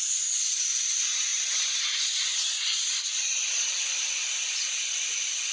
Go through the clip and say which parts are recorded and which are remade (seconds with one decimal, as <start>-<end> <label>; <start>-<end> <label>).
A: 0.0-1.3 recorded; 1.3-3.8 remade; 3.8-5.5 recorded